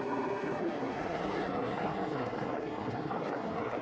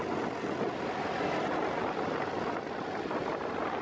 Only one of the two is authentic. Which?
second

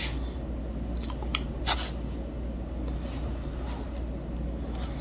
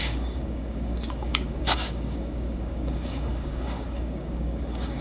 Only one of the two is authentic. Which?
first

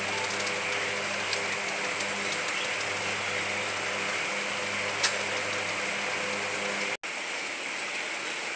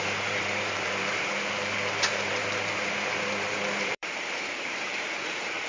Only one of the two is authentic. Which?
first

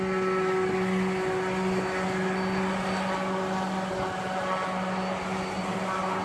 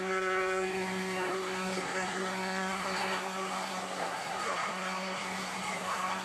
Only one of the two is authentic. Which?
first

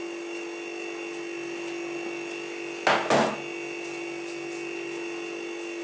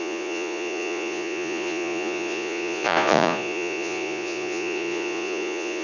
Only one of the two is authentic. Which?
first